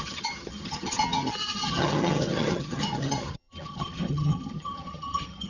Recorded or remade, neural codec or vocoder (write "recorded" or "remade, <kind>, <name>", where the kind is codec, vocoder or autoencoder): remade, vocoder, HiFi-GAN